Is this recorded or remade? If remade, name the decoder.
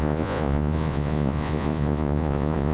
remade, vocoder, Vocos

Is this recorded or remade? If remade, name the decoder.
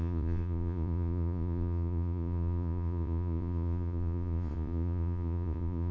remade, vocoder, Vocos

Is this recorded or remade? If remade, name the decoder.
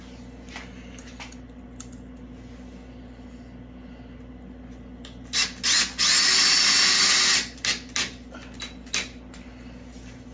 recorded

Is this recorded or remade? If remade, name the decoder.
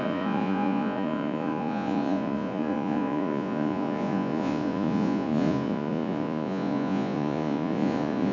remade, vocoder, Vocos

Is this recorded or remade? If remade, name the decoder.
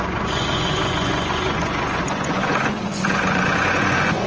remade, vocoder, Vocos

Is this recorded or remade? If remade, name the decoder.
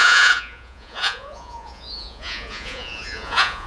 remade, vocoder, Vocos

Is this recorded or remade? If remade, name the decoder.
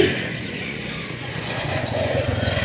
remade, vocoder, Vocos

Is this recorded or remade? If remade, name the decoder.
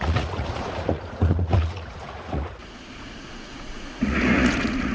remade, vocoder, Vocos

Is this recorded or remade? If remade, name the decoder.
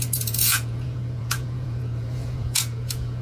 remade, vocoder, Vocos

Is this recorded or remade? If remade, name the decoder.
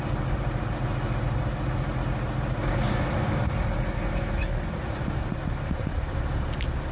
recorded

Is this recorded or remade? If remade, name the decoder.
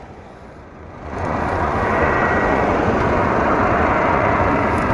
remade, vocoder, Vocos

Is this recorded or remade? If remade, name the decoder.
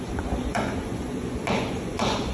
remade, vocoder, Vocos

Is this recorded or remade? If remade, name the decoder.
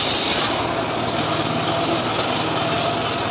recorded